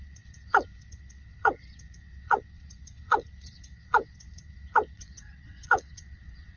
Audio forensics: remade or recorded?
remade